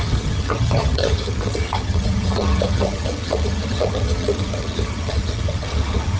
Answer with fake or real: fake